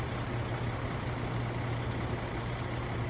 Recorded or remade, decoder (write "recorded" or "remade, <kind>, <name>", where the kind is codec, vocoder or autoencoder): recorded